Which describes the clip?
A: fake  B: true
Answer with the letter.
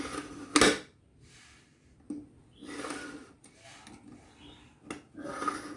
B